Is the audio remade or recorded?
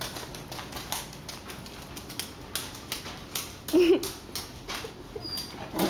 recorded